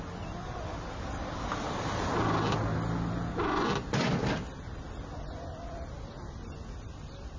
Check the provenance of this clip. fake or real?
real